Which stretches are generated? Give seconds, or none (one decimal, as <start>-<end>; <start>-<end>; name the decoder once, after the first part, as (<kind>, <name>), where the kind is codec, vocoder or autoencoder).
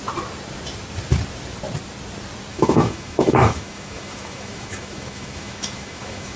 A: 2.5-6.4 (autoencoder, DAC-VAE)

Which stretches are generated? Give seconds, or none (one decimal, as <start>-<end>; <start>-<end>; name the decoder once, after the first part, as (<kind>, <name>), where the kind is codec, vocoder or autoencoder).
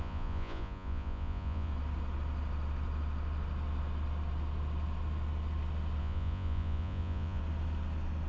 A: 0.0-1.7 (vocoder, Vocos); 6.0-7.4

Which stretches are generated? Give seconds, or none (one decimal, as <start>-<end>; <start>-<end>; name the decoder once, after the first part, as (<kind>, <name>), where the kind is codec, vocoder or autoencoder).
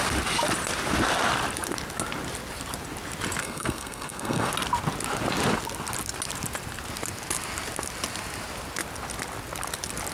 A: 3.4-4.5 (codec, SNAC)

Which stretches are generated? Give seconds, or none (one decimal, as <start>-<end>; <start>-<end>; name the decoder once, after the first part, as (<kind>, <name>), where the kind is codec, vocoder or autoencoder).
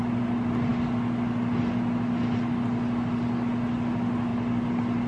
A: none